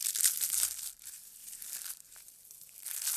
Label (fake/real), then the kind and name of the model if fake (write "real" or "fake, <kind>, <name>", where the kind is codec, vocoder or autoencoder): real